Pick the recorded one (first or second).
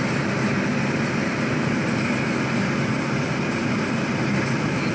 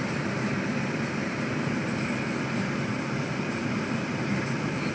first